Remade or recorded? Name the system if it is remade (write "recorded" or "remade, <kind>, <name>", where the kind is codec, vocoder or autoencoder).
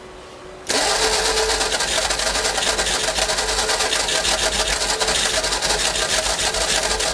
recorded